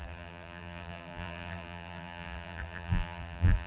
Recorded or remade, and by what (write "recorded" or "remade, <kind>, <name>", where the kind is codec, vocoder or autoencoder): remade, vocoder, BigVGAN v2